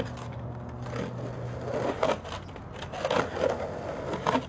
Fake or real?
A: real